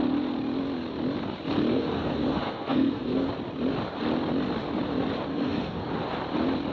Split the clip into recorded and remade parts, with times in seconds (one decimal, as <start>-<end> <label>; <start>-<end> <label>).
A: 0.0-1.7 recorded; 1.7-3.3 remade; 3.3-5.3 recorded; 5.3-5.9 remade; 5.9-6.7 recorded